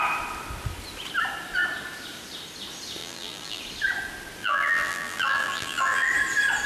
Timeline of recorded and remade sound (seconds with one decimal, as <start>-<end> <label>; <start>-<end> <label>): 0.0-3.0 recorded; 3.0-3.6 remade; 3.6-4.4 recorded; 4.4-6.1 remade; 6.1-6.7 recorded